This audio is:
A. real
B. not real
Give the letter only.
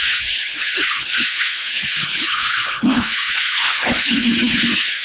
B